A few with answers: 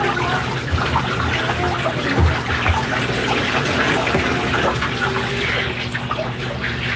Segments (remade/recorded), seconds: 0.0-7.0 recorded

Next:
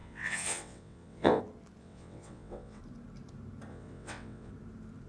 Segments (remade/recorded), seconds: 0.0-1.4 remade; 1.4-1.8 recorded; 1.8-2.8 remade; 2.8-3.7 recorded; 3.7-4.5 remade; 4.5-5.1 recorded

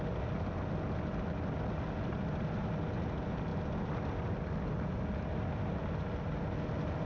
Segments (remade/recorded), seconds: 0.0-7.0 recorded